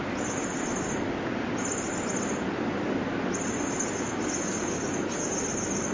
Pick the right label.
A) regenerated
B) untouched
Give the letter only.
B